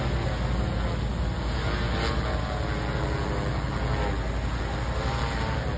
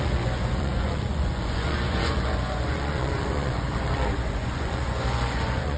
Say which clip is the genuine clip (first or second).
first